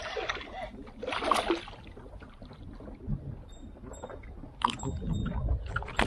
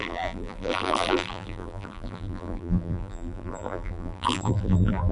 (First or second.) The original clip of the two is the first